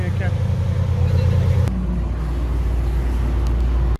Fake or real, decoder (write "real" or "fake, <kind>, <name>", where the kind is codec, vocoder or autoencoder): real